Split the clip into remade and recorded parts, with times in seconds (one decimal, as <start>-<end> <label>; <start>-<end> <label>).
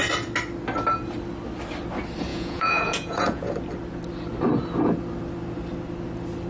0.0-2.3 recorded; 2.3-3.5 remade; 3.5-6.5 recorded